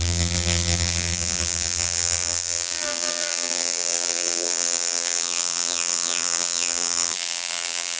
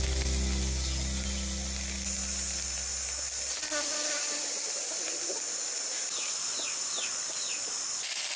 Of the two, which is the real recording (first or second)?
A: second